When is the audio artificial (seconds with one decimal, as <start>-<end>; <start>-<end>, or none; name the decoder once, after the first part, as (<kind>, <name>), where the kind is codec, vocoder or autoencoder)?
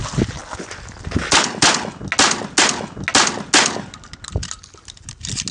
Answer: none